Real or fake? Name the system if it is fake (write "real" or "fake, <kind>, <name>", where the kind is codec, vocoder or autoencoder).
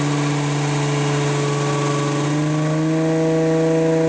real